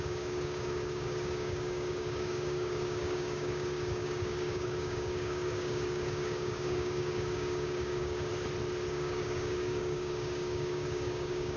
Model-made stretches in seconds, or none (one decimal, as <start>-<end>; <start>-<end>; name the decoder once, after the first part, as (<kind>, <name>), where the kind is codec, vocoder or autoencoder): 0.0-8.3 (codec, DAC); 8.9-11.6